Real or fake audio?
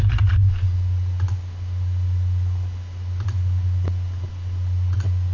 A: real